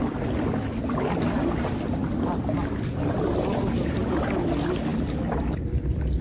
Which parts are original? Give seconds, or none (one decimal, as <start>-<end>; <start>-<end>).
0.0-6.2